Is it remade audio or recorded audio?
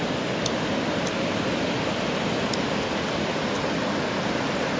recorded